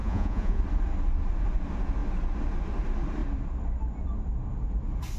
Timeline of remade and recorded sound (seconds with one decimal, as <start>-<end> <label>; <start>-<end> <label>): 0.0-0.6 remade; 0.6-5.2 recorded